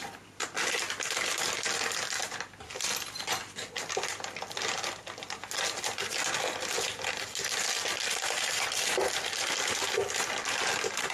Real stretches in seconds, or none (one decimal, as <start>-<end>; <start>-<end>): 0.0-11.1